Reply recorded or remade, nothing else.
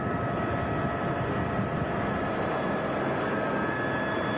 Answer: recorded